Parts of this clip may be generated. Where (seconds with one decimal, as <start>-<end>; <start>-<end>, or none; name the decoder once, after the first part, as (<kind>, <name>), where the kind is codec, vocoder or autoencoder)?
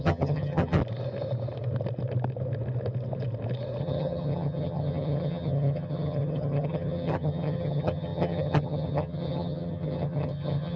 0.0-0.8 (vocoder, HiFi-GAN); 3.8-10.8